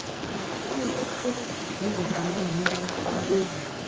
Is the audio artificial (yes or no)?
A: yes